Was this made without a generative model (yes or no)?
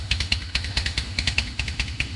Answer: no